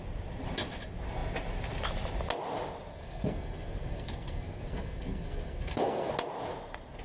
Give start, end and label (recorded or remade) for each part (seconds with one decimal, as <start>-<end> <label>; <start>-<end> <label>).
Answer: 0.0-2.9 recorded; 2.9-6.1 remade; 6.1-7.0 recorded